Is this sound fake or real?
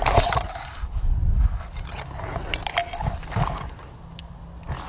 real